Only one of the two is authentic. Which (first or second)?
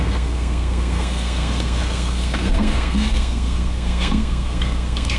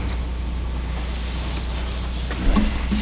second